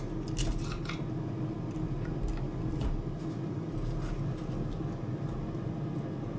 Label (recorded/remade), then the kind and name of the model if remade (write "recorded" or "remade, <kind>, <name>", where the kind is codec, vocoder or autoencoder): recorded